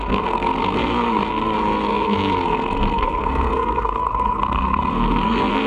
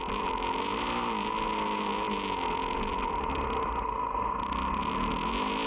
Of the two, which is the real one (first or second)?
second